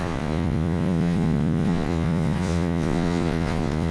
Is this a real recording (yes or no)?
no